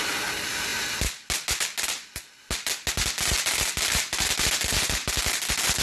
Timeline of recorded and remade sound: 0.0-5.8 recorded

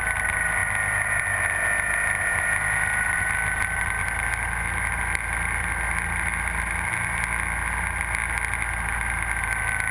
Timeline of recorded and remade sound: 0.0-9.9 recorded

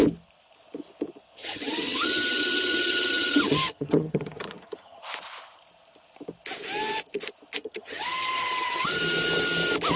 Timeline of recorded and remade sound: 0.0-1.4 recorded; 1.4-5.0 remade; 5.0-7.6 recorded; 7.6-9.0 remade; 9.0-10.0 recorded

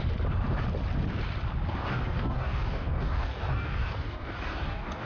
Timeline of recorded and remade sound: 0.0-1.8 recorded; 1.8-5.1 remade

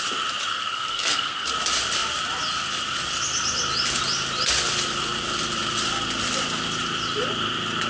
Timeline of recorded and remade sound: 0.0-0.5 recorded; 0.5-1.5 remade; 1.5-7.9 recorded

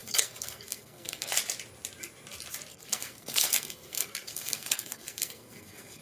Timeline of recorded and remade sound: 0.0-1.3 remade; 1.3-2.7 recorded; 2.7-6.0 remade